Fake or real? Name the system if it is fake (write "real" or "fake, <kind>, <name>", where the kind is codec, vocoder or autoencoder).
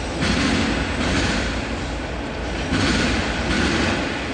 real